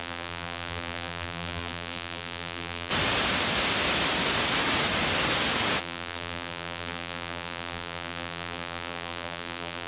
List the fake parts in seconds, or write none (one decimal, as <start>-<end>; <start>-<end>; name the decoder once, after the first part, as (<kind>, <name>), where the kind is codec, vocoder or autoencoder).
0.0-2.9 (vocoder, BigVGAN v2); 5.8-9.9